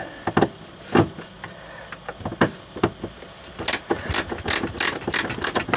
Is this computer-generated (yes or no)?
no